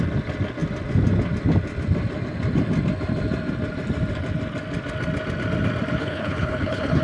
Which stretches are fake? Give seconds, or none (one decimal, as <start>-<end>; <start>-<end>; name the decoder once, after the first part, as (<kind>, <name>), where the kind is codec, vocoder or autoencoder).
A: 6.0-7.0 (codec, HILCodec)